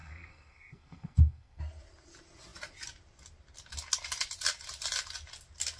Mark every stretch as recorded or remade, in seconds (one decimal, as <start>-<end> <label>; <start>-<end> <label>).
0.0-1.6 remade; 1.6-5.8 recorded